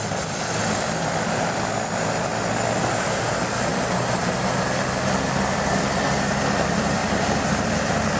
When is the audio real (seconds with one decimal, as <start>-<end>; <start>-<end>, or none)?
0.0-3.7; 4.3-7.0; 7.7-8.2